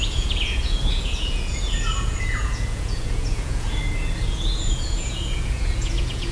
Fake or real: fake